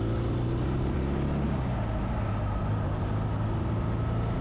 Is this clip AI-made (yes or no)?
no